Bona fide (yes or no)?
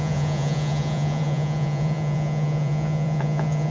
no